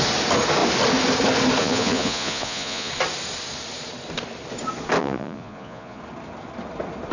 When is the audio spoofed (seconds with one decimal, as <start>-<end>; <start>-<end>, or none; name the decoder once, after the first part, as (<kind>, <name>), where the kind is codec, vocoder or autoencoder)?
1.6-2.9 (vocoder, Vocos); 5.0-6.0